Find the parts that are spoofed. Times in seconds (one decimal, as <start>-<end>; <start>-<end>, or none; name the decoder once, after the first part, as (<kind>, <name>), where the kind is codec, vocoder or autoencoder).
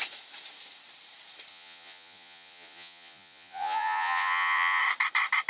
1.5-4.8 (vocoder, Vocos)